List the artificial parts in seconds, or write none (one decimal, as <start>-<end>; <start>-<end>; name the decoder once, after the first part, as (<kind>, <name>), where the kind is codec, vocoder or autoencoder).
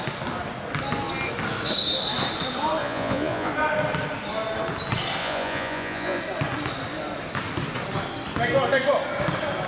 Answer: 2.8-3.5 (vocoder, Vocos); 5.2-6.2